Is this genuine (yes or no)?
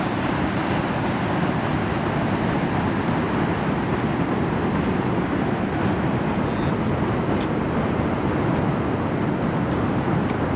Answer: yes